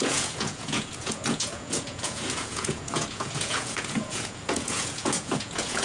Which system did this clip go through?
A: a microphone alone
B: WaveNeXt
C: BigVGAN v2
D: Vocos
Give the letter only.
D